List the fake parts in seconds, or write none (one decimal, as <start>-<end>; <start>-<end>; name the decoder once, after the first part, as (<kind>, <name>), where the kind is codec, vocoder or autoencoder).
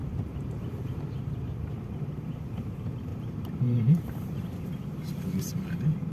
0.0-6.1 (vocoder, BigVGAN v2)